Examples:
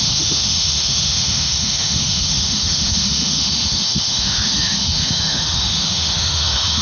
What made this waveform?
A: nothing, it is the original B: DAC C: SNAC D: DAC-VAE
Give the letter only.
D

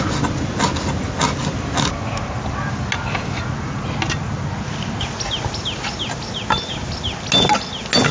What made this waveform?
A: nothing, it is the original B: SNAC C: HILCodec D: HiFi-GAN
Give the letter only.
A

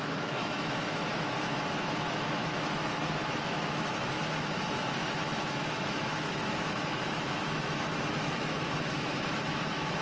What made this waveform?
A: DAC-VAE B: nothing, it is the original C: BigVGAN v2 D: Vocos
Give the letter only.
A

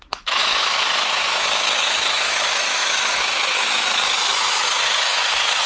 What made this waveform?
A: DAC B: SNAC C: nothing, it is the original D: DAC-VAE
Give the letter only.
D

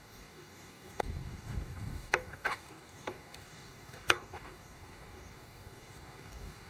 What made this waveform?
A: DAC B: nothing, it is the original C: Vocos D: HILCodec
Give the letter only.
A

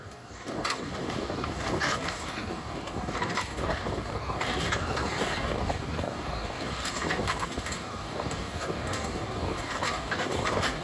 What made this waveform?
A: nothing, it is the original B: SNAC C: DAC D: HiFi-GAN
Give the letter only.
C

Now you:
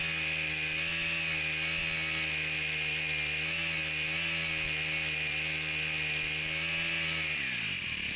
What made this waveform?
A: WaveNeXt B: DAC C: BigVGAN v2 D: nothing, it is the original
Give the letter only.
D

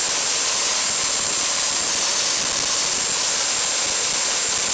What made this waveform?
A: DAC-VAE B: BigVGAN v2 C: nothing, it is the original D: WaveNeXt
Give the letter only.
C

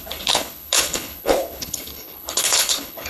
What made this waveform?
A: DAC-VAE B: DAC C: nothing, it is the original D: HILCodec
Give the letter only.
D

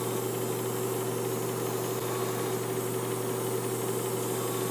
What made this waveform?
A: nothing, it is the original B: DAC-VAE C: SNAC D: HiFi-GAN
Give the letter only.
A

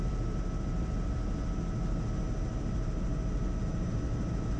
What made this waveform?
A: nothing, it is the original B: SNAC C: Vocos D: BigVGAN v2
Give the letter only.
A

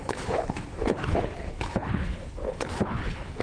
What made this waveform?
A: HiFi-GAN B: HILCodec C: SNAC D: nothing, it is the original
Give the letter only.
B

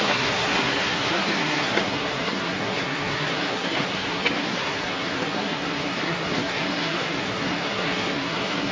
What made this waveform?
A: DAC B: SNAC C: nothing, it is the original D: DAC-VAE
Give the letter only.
B